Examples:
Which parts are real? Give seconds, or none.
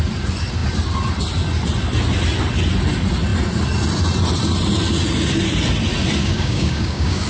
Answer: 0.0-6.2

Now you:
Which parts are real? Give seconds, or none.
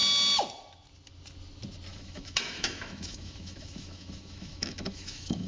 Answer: 0.0-1.9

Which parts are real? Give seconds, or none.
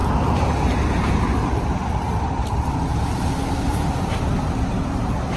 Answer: 0.0-1.1; 1.8-2.6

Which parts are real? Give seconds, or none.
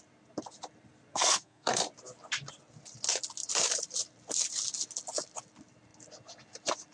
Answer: 0.0-1.1; 1.8-6.9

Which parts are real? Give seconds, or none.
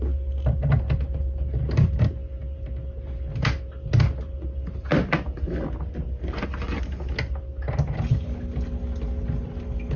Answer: 0.0-10.0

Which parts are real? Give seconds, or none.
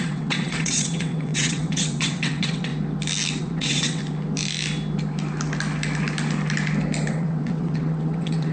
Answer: 2.7-3.4; 4.0-7.1